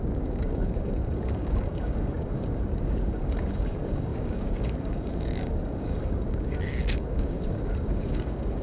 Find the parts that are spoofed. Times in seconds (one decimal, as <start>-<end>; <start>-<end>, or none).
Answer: 0.0-8.6